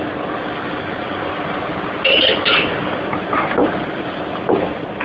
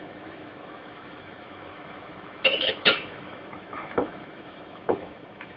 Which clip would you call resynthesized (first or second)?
second